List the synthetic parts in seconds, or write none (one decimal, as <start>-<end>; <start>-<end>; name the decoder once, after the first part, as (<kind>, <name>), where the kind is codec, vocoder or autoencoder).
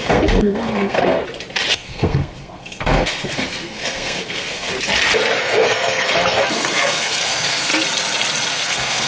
0.0-1.2 (codec, SNAC); 1.7-4.7; 5.4-7.7; 8.5-9.1